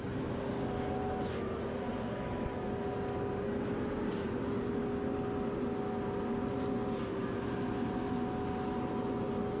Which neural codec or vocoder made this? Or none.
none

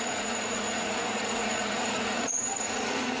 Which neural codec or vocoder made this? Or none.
vocoder, Vocos